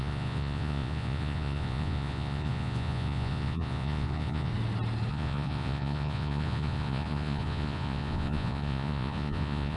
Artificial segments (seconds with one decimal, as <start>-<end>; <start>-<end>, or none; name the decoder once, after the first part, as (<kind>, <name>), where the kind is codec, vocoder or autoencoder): 0.0-4.5 (vocoder, Vocos); 5.1-9.8